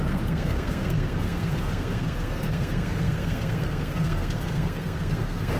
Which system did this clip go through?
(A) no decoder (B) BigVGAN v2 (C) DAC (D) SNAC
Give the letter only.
D